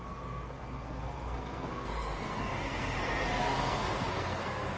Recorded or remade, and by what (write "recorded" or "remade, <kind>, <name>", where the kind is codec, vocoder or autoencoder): remade, codec, SNAC